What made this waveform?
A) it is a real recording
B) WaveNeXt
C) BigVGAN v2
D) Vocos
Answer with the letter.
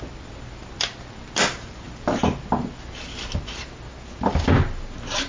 A